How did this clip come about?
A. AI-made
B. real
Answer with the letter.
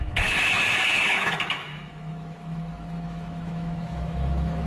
A